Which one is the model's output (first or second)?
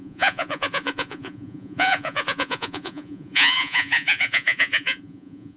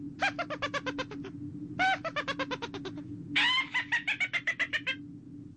first